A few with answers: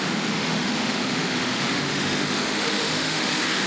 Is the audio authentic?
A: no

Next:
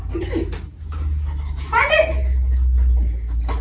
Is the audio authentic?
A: yes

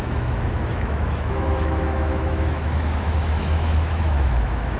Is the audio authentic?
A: no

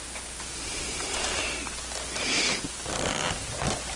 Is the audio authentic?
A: yes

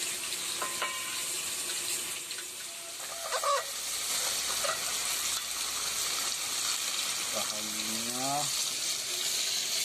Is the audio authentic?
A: yes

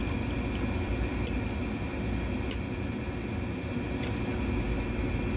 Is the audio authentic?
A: yes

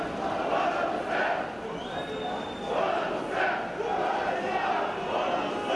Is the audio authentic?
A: yes